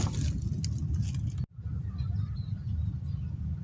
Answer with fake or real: real